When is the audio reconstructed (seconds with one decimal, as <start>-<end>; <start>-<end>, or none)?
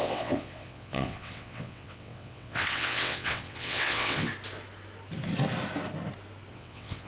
0.0-4.3; 6.5-7.1